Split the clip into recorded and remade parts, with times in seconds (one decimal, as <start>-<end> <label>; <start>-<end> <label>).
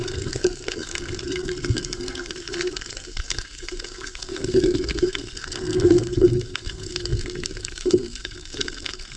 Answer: 0.0-9.2 remade